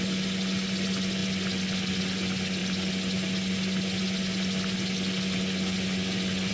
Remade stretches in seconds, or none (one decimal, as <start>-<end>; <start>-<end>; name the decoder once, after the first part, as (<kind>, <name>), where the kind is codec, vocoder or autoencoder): none